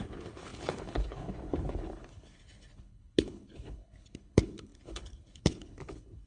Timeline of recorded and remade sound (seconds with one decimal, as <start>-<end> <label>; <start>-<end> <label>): 0.0-6.3 remade